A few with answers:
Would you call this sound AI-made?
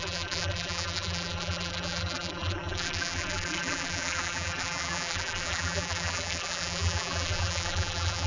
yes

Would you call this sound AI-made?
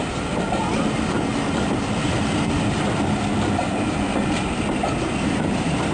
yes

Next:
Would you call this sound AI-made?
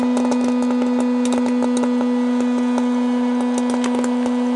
no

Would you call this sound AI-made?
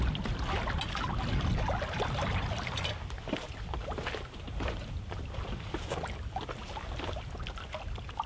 no